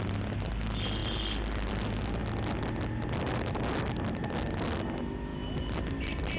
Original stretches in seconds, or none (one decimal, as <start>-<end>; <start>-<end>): 0.0-6.4